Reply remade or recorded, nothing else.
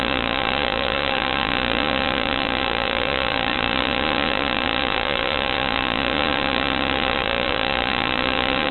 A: remade